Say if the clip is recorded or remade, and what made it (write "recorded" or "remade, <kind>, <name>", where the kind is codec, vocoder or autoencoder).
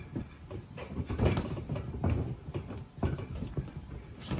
recorded